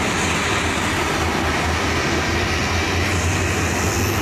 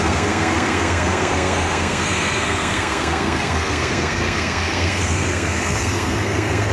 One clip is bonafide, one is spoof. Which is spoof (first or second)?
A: second